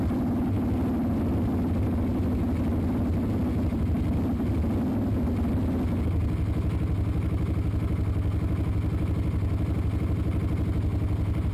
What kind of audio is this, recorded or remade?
recorded